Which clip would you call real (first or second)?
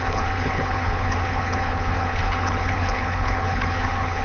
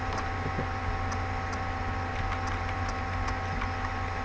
second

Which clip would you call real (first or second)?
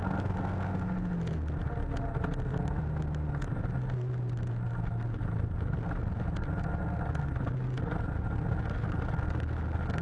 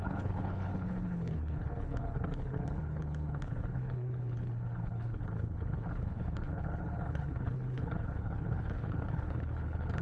first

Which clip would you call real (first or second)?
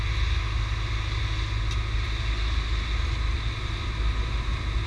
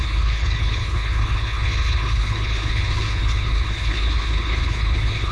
first